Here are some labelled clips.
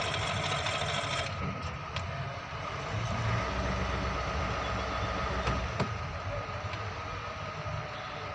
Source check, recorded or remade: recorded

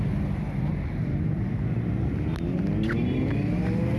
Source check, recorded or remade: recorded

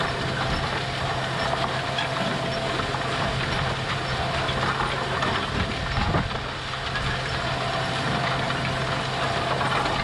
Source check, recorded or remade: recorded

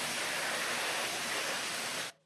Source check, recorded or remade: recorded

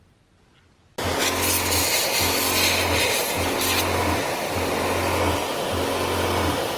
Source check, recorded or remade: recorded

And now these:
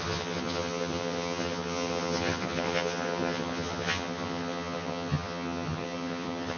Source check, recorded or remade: remade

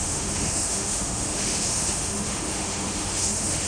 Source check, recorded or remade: remade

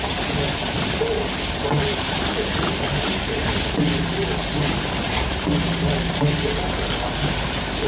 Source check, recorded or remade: recorded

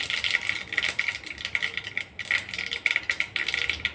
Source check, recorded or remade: recorded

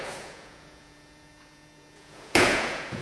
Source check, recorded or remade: remade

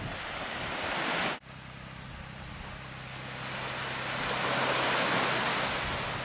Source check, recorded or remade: recorded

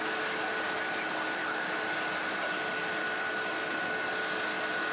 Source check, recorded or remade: recorded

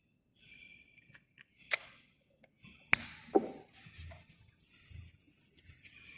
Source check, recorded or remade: recorded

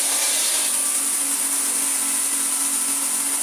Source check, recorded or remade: recorded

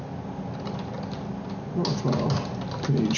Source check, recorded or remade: recorded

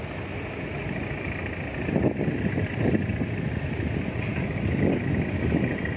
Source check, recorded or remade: recorded